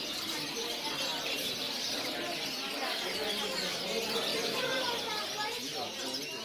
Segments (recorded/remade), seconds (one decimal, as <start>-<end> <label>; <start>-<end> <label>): 0.0-1.1 recorded; 1.1-2.1 remade; 2.1-4.3 recorded; 4.3-5.2 remade; 5.2-6.4 recorded